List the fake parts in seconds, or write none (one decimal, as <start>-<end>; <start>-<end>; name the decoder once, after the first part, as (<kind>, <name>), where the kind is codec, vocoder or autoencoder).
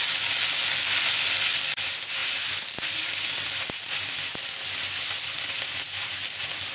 none